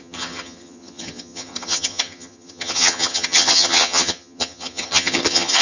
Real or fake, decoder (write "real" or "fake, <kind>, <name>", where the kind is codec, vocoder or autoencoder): fake, vocoder, HiFi-GAN